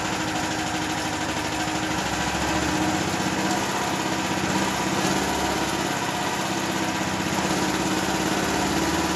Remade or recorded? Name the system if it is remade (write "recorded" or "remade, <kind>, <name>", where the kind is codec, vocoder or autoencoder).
recorded